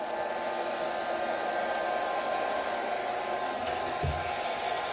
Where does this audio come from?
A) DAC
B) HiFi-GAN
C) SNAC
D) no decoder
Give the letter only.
D